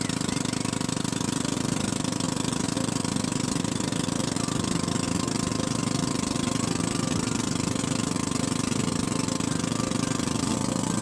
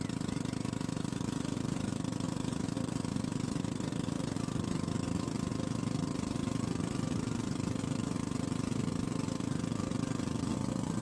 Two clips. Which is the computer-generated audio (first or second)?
second